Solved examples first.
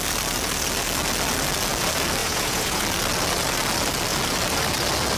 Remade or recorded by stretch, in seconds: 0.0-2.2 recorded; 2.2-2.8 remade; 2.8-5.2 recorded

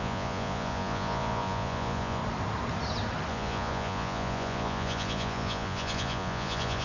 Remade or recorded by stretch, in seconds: 0.0-2.2 remade; 2.2-3.3 recorded; 3.3-6.8 remade

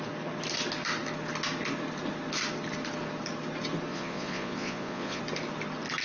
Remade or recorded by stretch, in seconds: 0.0-3.9 recorded; 3.9-5.2 remade; 5.2-6.0 recorded